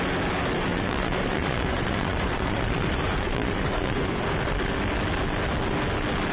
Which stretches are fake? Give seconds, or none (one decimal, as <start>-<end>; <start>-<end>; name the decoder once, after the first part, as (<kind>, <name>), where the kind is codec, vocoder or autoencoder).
0.7-4.2 (vocoder, Vocos)